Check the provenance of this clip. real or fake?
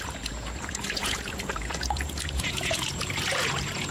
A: fake